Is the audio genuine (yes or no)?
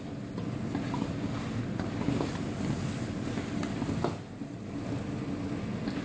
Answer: yes